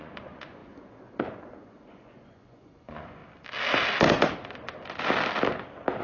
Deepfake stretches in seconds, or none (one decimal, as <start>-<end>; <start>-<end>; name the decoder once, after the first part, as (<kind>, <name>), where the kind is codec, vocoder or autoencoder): 0.0-3.2 (vocoder, Vocos)